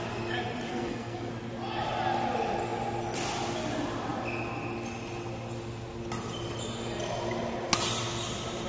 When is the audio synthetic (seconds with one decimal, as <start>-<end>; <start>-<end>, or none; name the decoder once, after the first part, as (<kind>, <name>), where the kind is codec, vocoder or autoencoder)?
0.7-1.3 (codec, SNAC)